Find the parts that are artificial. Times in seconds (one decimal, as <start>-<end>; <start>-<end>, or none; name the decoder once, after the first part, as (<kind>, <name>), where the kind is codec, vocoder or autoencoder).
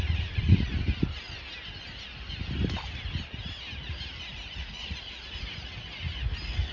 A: 0.0-0.7 (vocoder, Vocos); 4.5-5.7